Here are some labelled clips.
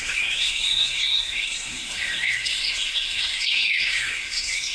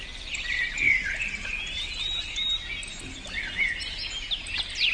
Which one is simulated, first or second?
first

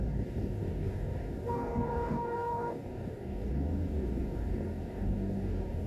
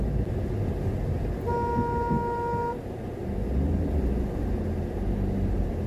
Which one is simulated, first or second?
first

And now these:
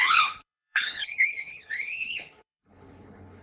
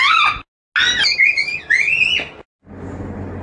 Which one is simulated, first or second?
first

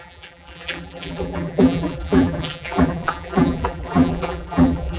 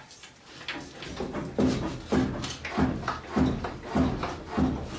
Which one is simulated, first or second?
first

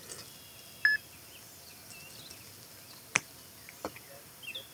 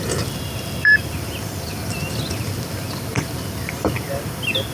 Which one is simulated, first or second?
second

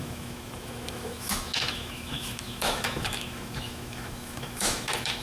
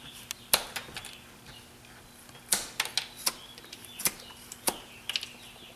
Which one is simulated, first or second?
first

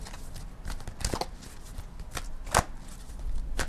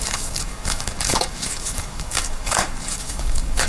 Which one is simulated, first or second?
second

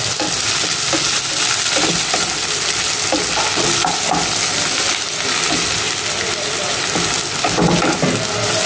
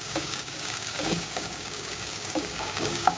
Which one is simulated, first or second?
second